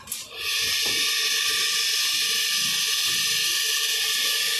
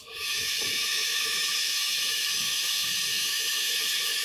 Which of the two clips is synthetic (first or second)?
second